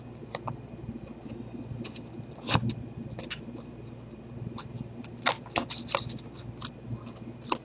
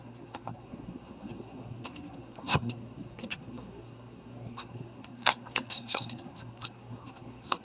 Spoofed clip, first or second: second